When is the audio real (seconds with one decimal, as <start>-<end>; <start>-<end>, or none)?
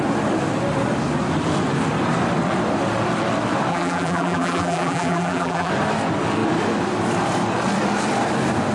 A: 0.0-3.7; 5.7-8.7